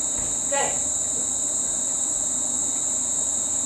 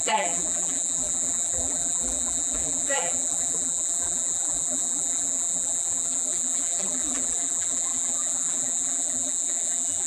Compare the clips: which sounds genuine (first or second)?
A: first